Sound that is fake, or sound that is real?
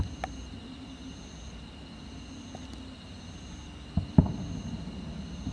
real